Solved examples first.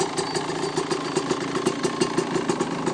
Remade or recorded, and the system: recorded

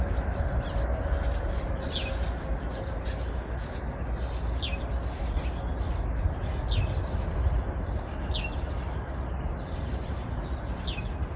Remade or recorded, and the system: recorded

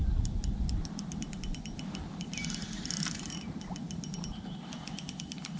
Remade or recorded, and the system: recorded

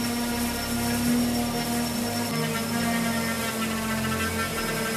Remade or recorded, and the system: recorded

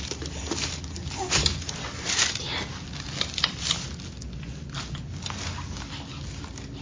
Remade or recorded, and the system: recorded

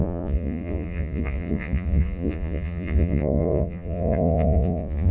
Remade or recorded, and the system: remade, vocoder, Vocos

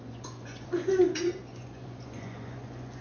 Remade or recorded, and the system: remade, vocoder, Vocos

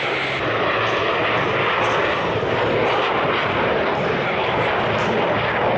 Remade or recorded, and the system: recorded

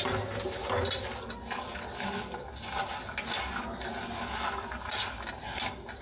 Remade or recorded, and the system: recorded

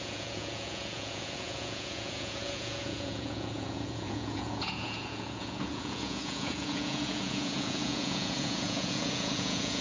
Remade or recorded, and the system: remade, vocoder, Vocos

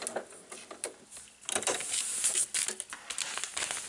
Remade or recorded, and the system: recorded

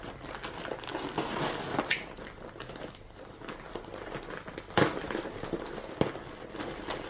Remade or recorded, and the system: recorded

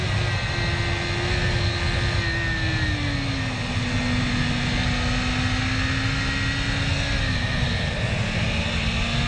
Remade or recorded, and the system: recorded